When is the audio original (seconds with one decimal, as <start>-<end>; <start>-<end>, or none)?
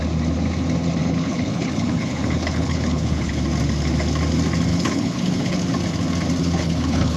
0.0-1.0; 3.4-4.7; 5.7-6.4